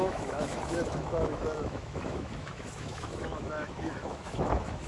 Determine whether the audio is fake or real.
fake